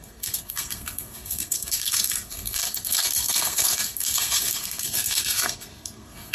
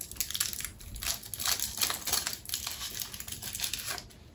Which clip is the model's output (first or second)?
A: first